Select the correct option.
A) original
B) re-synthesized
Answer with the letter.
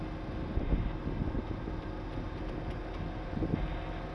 A